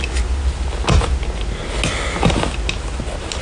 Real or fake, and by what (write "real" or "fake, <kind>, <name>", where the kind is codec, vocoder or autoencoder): real